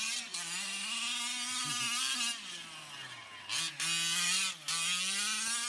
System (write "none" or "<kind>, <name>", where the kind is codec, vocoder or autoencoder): none